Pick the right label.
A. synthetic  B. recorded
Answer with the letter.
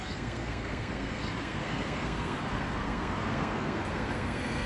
A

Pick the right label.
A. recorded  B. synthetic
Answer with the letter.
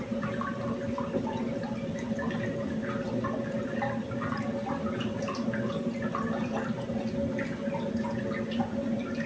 A